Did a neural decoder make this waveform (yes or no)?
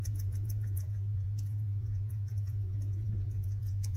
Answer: yes